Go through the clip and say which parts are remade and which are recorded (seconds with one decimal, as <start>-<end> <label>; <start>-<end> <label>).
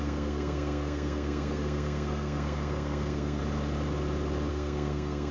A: 0.0-3.4 remade; 3.4-4.5 recorded; 4.5-5.3 remade